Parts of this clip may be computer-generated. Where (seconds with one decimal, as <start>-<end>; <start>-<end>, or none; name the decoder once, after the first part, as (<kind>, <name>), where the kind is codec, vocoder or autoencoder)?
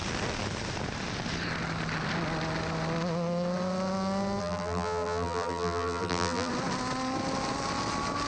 4.4-6.5 (vocoder, BigVGAN v2)